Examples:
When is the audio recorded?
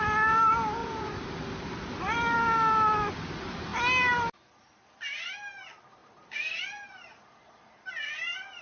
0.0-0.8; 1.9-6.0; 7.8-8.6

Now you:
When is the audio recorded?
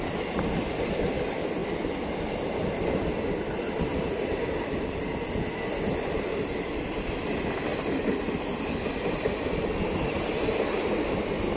0.0-1.6; 4.8-11.6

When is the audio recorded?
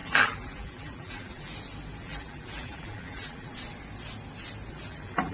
1.5-2.0; 3.5-4.7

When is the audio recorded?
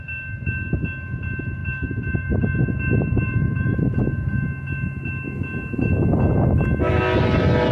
0.0-1.6; 4.0-7.7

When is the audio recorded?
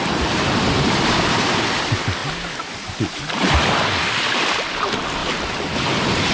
2.2-4.3; 5.2-6.3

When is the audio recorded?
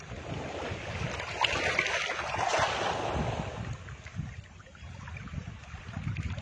0.0-6.4